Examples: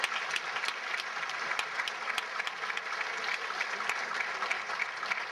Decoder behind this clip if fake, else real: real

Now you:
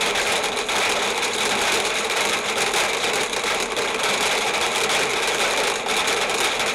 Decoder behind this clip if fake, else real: real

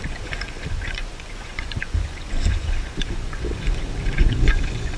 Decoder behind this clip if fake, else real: fake, vocoder, Vocos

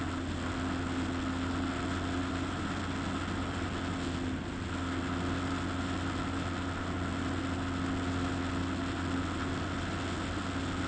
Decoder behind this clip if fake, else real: real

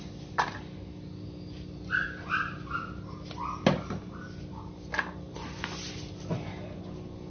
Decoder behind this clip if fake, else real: real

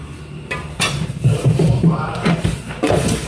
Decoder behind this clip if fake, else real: fake, vocoder, BigVGAN v2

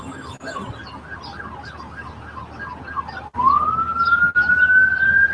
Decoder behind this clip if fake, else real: real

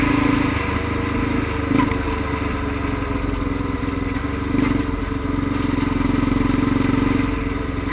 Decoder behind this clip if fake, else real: real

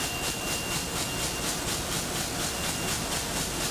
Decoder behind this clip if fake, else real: real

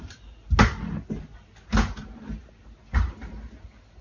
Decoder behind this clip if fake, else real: real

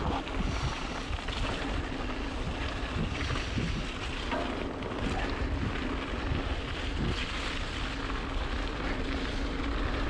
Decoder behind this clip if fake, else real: real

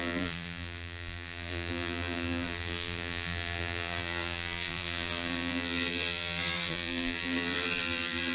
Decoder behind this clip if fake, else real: fake, vocoder, BigVGAN v2